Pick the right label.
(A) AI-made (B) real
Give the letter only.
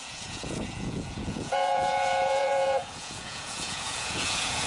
A